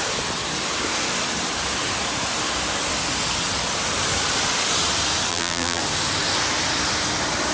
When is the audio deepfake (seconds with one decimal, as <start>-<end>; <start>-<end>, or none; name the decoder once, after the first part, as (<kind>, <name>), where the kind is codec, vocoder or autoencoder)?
5.3-5.8 (vocoder, BigVGAN v2)